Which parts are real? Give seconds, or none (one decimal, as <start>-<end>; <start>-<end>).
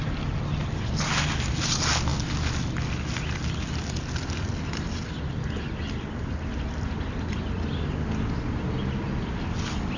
0.0-10.0